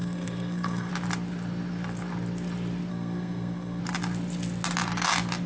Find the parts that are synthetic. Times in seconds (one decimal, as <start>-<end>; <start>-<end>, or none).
0.0-0.9; 2.9-3.8